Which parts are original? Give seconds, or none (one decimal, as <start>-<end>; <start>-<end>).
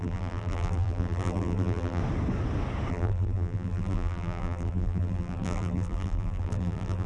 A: 2.0-2.9